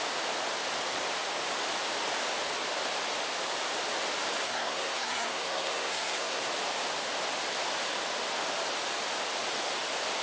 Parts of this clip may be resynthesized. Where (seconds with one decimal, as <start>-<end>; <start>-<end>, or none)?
4.4-6.5